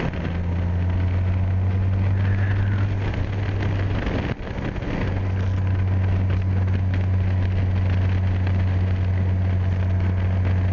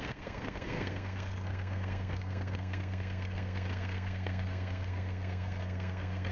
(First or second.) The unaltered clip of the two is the first